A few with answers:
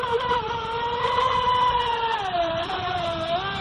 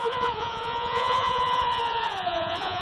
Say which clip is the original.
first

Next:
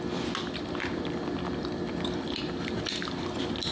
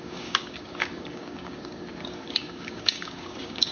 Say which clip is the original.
first